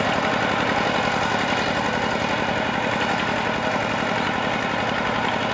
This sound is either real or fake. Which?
real